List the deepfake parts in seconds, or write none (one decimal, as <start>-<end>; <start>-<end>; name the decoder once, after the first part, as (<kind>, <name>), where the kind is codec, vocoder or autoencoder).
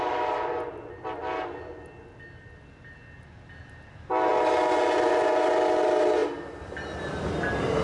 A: 6.2-7.0 (vocoder, BigVGAN v2)